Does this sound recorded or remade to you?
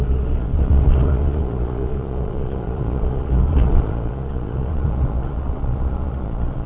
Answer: remade